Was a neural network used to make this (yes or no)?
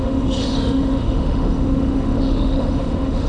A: yes